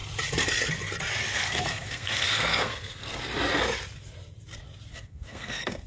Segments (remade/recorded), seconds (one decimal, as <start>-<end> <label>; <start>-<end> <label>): 0.0-1.3 recorded; 1.3-3.2 remade; 3.2-4.9 recorded; 4.9-5.9 remade